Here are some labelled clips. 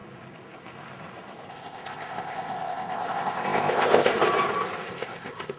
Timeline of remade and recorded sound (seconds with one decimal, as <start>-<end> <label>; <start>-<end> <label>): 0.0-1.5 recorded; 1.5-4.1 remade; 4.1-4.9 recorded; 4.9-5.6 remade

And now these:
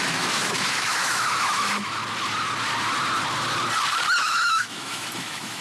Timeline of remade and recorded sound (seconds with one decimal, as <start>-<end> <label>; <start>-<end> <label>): 0.0-2.0 remade; 2.0-4.2 recorded; 4.2-5.6 remade

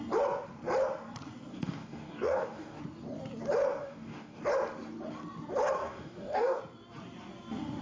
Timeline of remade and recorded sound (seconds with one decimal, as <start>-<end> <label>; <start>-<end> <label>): 0.0-1.5 recorded; 1.5-2.8 remade; 2.8-3.8 recorded; 3.8-4.4 remade; 4.4-5.8 recorded; 5.8-6.6 remade; 6.6-7.8 recorded

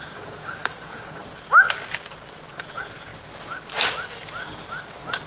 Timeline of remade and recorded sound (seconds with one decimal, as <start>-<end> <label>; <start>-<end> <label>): 0.0-1.2 remade; 1.2-2.5 recorded; 2.5-3.1 remade; 3.1-5.3 recorded

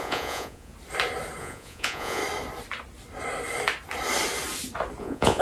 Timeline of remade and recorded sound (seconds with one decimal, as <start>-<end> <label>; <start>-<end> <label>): 0.0-0.7 remade; 0.7-1.4 recorded; 1.4-2.2 remade; 2.2-5.0 recorded; 5.0-5.4 remade

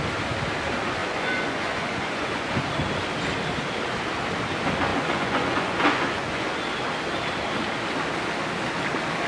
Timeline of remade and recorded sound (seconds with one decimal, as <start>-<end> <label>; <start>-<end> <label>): 0.0-1.0 recorded; 1.0-2.7 remade; 2.7-4.9 recorded; 4.9-6.6 remade; 6.6-9.3 recorded